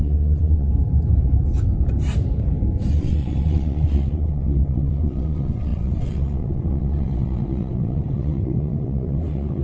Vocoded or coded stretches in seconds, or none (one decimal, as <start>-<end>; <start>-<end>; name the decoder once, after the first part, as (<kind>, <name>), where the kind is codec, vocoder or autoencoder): 0.0-0.7 (vocoder, WaveNeXt); 2.9-9.6